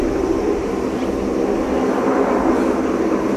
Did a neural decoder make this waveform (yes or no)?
no